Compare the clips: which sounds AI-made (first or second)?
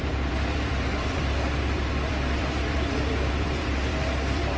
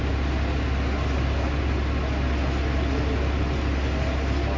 first